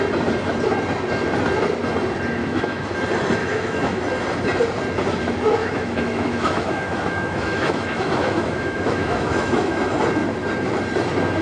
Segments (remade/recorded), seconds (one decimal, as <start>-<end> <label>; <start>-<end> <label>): 0.0-2.4 recorded; 2.4-2.9 remade; 2.9-3.4 recorded; 3.4-4.0 remade; 4.0-5.6 recorded; 5.6-9.8 remade; 9.8-11.4 recorded